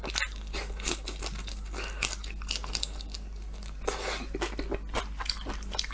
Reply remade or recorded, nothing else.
recorded